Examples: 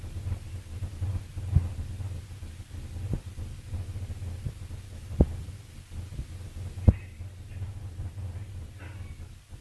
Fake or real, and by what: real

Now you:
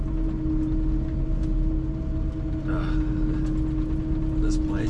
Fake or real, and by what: real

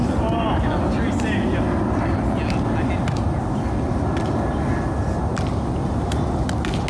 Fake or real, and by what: real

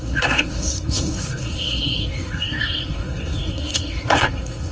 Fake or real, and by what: fake, codec, SNAC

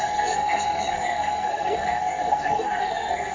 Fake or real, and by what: fake, codec, SNAC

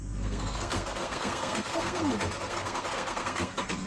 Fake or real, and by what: fake, codec, SNAC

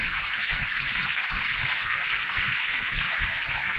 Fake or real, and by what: fake, codec, SNAC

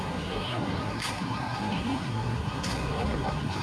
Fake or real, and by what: fake, codec, SNAC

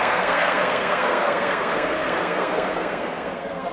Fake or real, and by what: fake, codec, SNAC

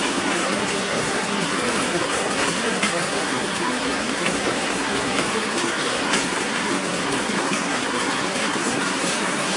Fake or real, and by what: fake, codec, SNAC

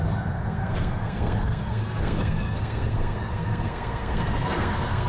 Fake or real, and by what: fake, codec, SNAC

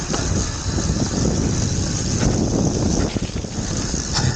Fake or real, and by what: real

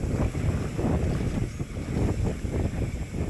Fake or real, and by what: real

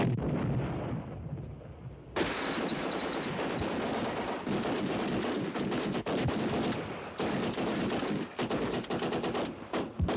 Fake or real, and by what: real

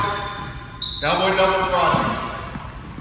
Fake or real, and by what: real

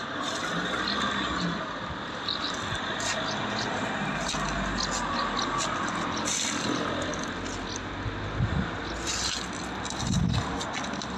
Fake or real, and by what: real